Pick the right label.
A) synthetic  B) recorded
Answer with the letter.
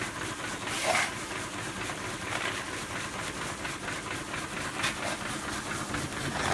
B